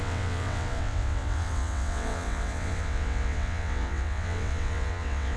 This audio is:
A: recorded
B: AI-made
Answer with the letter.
B